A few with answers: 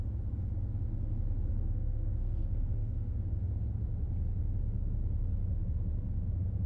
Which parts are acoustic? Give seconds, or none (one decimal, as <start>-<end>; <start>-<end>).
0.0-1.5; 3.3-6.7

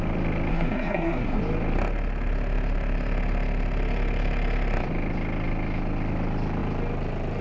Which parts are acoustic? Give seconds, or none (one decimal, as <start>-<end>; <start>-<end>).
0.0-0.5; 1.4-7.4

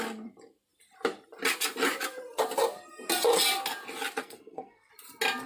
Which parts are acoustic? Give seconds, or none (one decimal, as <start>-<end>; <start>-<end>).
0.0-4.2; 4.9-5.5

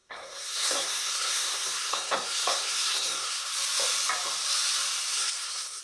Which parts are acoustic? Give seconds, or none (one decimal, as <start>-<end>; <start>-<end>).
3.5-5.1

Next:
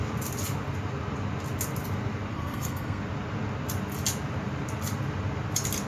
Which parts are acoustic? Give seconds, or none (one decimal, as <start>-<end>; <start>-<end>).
0.0-2.3; 3.0-5.9

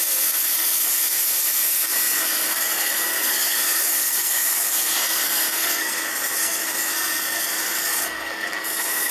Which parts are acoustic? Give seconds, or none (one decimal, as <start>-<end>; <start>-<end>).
none

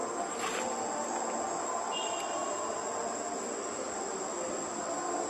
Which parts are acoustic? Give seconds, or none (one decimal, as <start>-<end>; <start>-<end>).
0.0-5.3